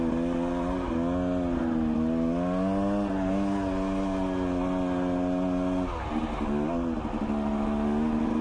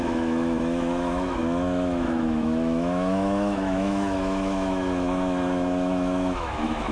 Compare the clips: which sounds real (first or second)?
first